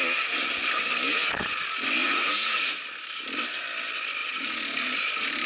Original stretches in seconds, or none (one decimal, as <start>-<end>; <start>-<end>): 0.0-2.0; 2.6-4.2; 4.9-5.5